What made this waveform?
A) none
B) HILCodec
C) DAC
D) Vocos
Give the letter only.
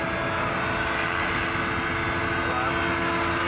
A